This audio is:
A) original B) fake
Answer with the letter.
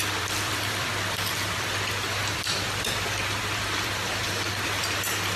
B